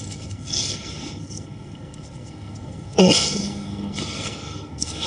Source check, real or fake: fake